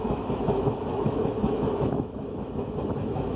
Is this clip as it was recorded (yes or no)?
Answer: no